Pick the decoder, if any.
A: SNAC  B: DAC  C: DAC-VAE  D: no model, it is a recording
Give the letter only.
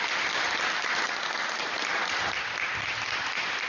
D